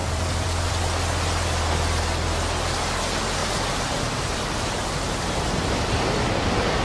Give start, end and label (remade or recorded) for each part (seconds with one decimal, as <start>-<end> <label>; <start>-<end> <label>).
0.0-0.7 remade; 0.7-3.4 recorded; 3.4-5.4 remade; 5.4-6.8 recorded

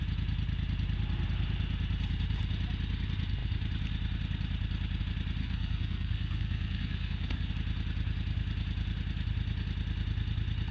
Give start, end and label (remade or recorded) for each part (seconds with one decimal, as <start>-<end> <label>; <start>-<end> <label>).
0.0-5.4 recorded; 5.4-7.5 remade; 7.5-10.7 recorded